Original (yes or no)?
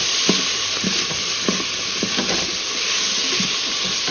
yes